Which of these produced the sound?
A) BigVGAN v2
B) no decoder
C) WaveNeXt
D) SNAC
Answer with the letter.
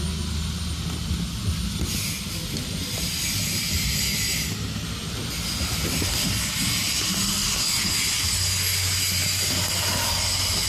B